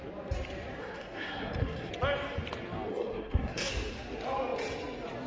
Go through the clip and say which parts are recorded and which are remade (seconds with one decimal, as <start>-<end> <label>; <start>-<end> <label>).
0.0-0.8 recorded; 0.8-1.9 remade; 1.9-2.9 recorded; 2.9-3.7 remade; 3.7-5.3 recorded